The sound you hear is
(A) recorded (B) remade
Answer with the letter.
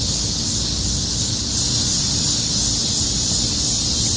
A